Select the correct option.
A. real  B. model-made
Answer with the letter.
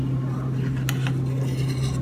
A